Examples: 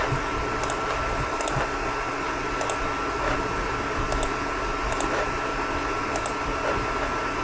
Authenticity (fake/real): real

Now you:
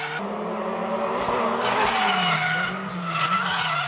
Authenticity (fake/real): real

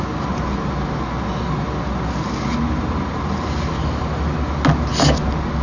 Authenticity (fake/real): real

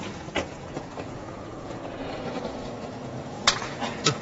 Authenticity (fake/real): fake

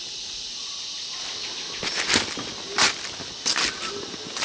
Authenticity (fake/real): real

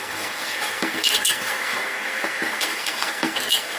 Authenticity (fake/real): fake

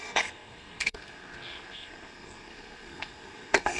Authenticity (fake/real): fake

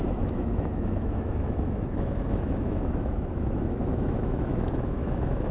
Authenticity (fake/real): fake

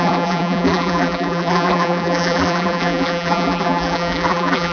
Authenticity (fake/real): fake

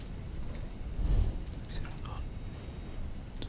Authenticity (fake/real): real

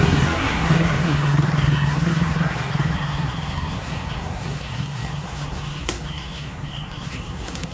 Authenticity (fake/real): fake